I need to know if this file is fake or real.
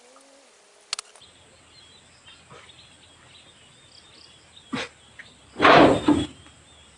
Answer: real